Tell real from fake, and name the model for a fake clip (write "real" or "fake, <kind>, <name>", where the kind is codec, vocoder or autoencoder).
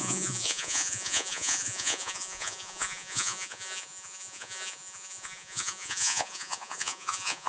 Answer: fake, vocoder, Vocos